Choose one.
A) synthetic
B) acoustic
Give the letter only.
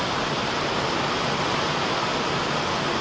B